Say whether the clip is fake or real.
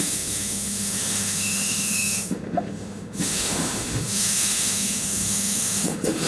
fake